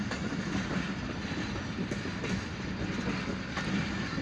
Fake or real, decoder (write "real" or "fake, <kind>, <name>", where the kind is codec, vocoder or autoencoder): real